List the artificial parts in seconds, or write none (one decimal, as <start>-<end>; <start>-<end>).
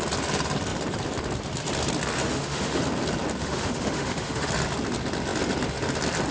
2.3-2.8; 3.4-4.5